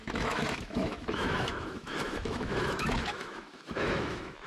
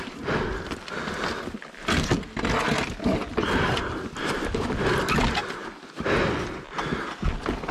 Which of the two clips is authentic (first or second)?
second